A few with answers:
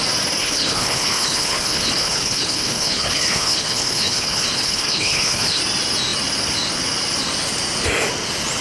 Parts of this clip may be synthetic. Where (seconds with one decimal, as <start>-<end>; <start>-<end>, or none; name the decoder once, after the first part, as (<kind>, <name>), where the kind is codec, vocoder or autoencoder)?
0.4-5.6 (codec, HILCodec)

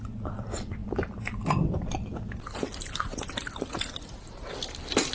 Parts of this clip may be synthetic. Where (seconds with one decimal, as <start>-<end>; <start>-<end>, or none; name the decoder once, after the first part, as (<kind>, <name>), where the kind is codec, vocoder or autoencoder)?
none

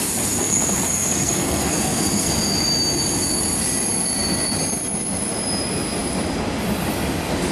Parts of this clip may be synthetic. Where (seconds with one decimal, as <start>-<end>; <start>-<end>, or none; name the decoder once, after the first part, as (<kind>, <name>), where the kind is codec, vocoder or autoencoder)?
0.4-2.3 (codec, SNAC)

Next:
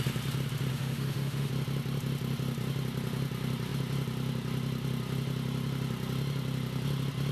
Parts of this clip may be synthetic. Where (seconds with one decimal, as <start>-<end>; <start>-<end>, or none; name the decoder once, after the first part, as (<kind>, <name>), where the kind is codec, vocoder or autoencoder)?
0.7-1.5 (autoencoder, DAC-VAE)

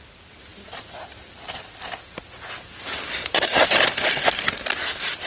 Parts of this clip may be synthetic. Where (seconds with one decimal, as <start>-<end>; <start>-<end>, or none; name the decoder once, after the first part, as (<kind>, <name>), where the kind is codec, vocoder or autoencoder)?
none

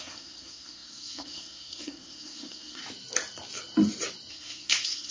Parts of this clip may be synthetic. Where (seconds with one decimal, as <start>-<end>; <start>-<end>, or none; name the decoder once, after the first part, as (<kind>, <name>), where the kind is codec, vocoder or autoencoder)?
0.0-2.8 (codec, SNAC); 4.3-5.1

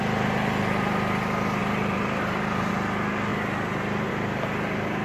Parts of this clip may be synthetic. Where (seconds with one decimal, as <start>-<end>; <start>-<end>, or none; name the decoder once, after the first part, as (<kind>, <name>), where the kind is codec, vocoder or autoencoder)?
1.6-2.7 (vocoder, BigVGAN v2); 3.3-4.1